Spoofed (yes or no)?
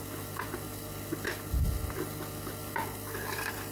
no